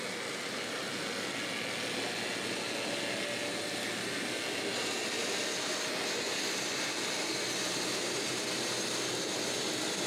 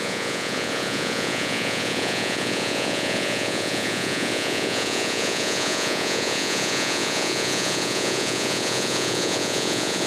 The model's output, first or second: second